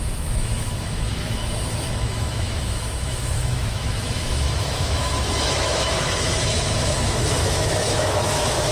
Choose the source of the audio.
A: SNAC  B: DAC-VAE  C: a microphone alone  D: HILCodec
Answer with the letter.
B